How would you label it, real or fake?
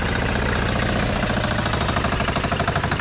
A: real